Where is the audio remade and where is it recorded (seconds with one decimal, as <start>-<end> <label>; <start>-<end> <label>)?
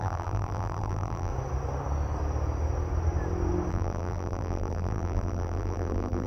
0.0-1.3 remade; 1.3-3.7 recorded; 3.7-6.3 remade